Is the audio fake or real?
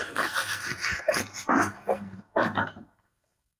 fake